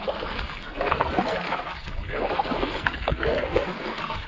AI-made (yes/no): yes